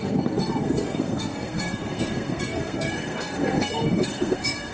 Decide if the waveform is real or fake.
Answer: fake